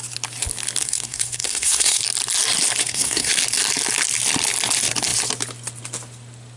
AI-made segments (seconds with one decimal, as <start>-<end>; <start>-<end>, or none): 0.8-2.0; 2.8-3.3